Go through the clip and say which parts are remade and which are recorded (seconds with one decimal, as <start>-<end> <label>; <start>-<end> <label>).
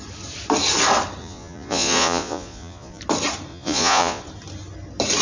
0.0-1.2 recorded; 1.2-3.0 remade; 3.0-3.5 recorded; 3.5-4.2 remade; 4.2-5.2 recorded